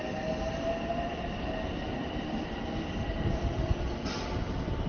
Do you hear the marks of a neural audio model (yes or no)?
no